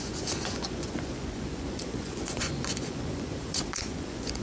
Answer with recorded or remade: remade